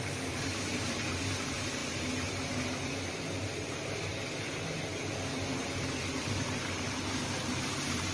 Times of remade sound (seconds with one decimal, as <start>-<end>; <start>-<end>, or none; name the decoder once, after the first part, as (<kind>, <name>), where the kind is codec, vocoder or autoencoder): 0.0-1.8 (vocoder, BigVGAN v2); 3.4-4.1; 7.4-8.1